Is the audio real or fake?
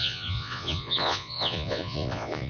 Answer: fake